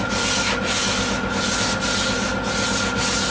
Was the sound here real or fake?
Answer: real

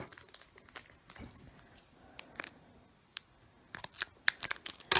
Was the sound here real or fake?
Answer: real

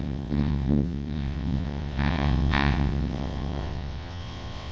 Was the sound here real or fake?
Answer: fake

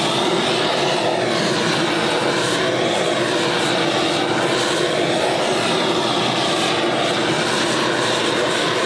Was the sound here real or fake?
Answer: real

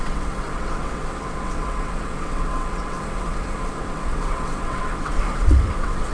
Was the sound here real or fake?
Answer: fake